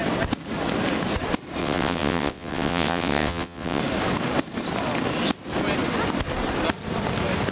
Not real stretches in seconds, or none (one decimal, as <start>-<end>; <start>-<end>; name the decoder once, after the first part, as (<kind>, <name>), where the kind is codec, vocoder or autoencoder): 1.6-3.8 (vocoder, WaveNeXt)